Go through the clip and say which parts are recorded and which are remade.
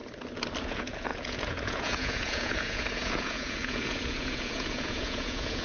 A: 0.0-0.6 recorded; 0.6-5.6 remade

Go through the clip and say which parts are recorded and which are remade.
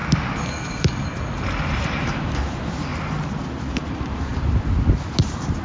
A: 0.0-1.7 recorded; 1.7-2.9 remade; 2.9-3.7 recorded; 3.7-4.3 remade; 4.3-4.9 recorded; 4.9-5.6 remade